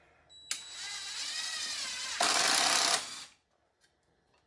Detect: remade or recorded recorded